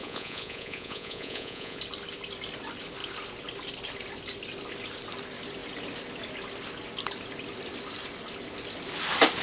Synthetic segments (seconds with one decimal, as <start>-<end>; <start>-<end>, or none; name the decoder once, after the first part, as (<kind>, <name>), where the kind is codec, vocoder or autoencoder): 0.0-1.8 (vocoder, Vocos)